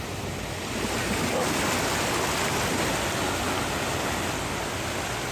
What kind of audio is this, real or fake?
real